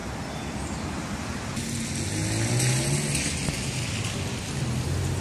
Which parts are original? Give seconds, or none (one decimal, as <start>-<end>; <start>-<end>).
0.0-2.2